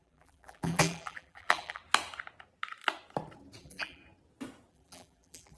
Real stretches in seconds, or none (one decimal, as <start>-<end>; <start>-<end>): 1.8-3.6; 4.0-4.7